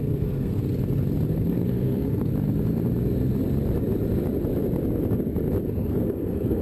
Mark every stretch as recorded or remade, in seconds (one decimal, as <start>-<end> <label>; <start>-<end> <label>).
0.0-0.6 remade; 0.6-1.3 recorded; 1.3-2.3 remade; 2.3-5.7 recorded; 5.7-6.6 remade